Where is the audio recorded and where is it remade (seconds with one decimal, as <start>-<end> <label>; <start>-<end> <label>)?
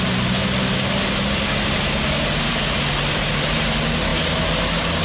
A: 0.0-5.0 recorded